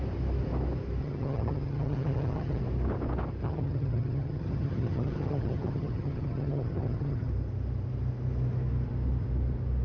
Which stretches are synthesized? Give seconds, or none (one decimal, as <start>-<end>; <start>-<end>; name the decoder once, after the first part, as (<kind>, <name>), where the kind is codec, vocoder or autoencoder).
1.0-2.6 (vocoder, HiFi-GAN); 3.4-7.3